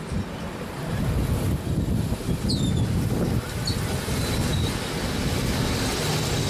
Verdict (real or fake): real